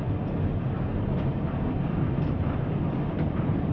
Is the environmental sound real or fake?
real